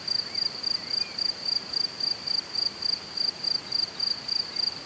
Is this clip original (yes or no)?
yes